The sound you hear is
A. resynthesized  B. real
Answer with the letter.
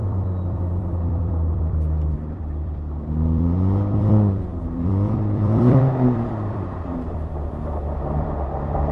A